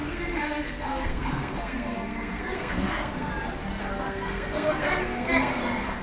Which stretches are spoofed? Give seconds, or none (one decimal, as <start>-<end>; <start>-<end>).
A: 0.0-3.3; 3.8-6.0